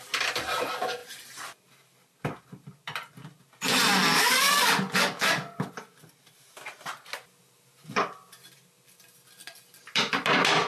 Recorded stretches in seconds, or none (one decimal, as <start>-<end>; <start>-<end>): 0.0-4.1; 5.7-10.7